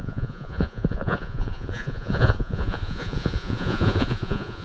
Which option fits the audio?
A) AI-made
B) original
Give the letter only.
A